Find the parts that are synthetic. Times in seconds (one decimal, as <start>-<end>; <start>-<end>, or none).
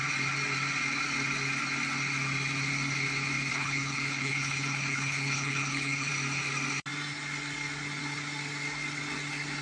3.5-6.1